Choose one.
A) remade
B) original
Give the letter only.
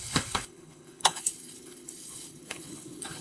A